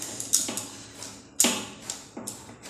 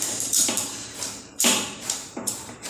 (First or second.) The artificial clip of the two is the second